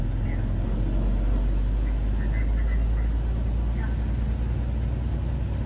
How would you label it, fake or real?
real